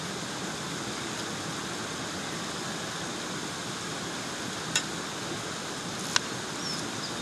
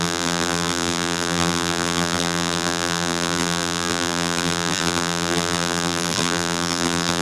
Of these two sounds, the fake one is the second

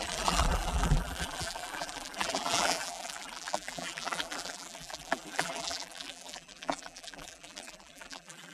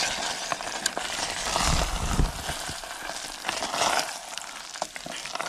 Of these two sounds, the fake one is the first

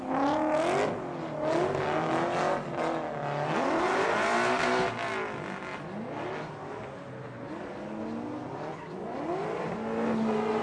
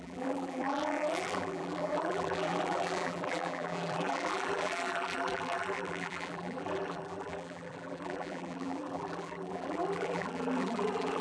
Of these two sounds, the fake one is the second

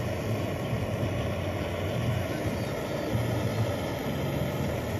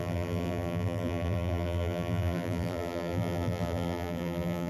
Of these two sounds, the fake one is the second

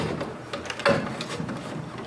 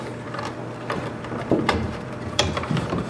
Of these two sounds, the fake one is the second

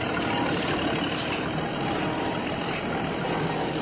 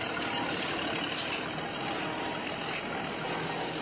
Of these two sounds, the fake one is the first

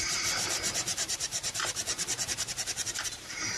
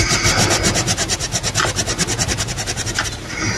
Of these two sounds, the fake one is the first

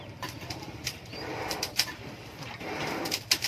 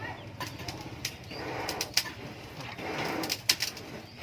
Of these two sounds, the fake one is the first